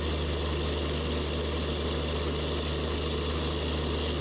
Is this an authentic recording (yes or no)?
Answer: yes